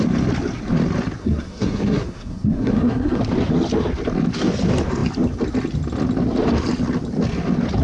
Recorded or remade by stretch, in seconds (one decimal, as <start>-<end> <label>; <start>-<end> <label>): 0.0-1.2 recorded; 1.2-3.2 remade; 3.2-7.8 recorded